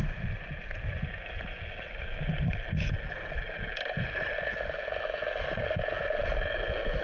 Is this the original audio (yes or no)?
yes